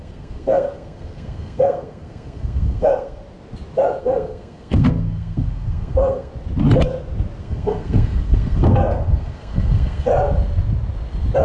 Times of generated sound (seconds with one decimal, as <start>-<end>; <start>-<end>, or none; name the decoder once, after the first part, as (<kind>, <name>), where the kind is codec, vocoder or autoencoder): 0.0-3.2 (codec, SNAC); 4.0-6.3; 7.4-10.1